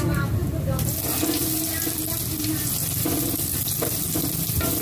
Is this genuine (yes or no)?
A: yes